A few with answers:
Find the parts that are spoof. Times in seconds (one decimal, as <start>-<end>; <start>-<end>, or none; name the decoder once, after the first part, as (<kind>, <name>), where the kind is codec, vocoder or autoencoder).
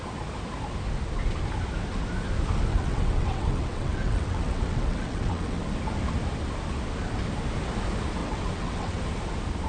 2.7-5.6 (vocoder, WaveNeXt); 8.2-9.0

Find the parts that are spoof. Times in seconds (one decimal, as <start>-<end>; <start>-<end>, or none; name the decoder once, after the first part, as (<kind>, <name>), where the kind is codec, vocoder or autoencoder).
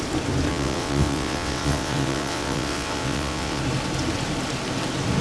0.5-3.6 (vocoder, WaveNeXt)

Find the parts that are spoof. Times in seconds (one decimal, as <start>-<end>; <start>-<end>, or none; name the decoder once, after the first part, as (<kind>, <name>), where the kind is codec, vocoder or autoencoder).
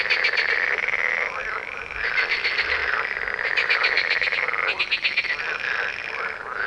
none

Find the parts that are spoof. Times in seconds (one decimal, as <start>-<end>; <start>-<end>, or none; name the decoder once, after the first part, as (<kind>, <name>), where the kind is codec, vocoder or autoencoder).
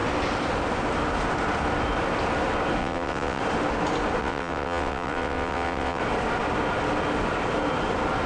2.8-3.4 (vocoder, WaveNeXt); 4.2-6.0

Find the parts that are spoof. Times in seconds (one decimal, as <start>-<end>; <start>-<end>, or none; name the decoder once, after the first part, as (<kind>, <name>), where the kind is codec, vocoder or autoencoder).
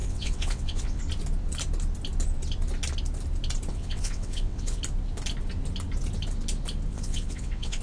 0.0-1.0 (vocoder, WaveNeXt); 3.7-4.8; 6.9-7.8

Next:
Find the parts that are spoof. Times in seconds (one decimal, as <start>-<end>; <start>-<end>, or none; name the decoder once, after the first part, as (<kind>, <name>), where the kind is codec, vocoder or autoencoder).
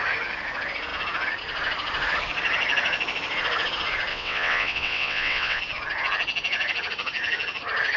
4.1-5.6 (vocoder, WaveNeXt)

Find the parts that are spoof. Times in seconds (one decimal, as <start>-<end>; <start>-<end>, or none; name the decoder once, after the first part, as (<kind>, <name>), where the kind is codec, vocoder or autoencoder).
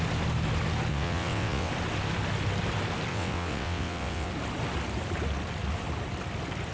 0.9-1.7 (vocoder, WaveNeXt); 3.1-4.3